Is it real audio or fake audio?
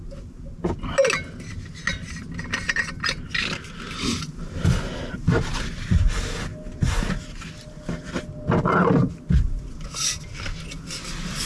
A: real